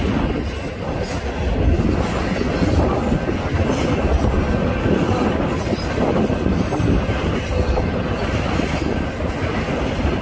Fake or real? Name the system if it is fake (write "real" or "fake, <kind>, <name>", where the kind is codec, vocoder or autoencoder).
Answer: real